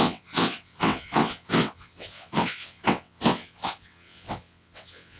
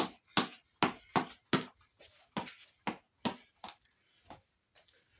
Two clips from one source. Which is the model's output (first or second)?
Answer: first